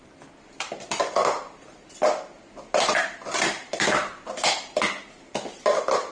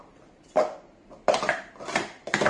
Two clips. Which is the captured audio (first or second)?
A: first